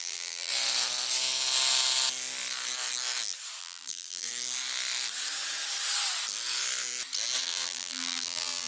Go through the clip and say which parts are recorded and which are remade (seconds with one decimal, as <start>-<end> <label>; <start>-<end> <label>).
0.0-0.5 remade; 0.5-3.6 recorded; 3.6-4.3 remade; 4.3-7.4 recorded; 7.4-8.7 remade